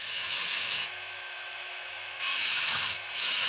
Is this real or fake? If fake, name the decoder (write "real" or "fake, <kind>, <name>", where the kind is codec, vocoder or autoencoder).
fake, autoencoder, DAC-VAE